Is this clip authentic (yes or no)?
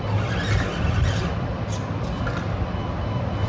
yes